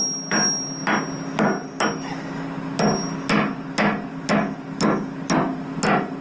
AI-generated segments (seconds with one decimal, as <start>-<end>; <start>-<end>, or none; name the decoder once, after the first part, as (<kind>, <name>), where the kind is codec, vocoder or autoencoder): none